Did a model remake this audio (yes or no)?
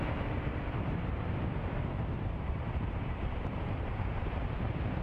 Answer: yes